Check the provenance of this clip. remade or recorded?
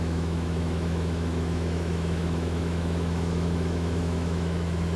remade